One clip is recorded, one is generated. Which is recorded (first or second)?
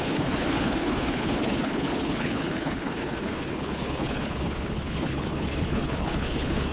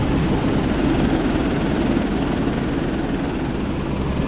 second